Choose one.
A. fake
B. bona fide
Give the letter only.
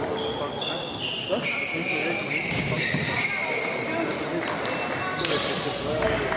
B